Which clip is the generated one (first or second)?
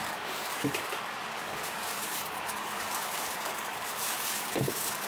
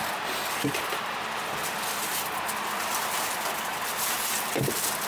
first